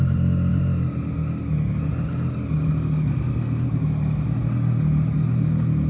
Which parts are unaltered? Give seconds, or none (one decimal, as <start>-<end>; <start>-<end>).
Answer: 0.0-5.9